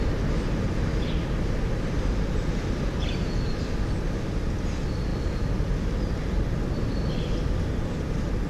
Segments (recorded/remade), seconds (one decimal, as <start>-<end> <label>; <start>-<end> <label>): 0.0-8.5 recorded